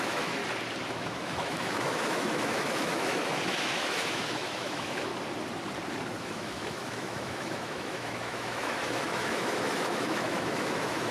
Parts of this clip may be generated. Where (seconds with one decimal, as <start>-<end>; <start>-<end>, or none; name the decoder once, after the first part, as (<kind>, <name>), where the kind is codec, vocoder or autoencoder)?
0.0-0.4 (autoencoder, DAC-VAE); 0.9-5.1; 6.2-11.1